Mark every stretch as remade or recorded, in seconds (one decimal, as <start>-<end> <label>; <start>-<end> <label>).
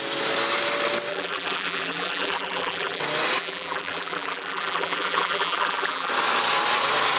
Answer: 0.0-1.1 recorded; 1.1-3.0 remade; 3.0-3.4 recorded; 3.4-6.1 remade; 6.1-7.2 recorded